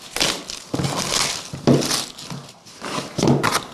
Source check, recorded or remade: recorded